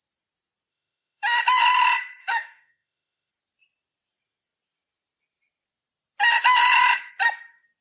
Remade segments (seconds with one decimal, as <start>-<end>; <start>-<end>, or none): 0.7-1.4; 2.2-3.3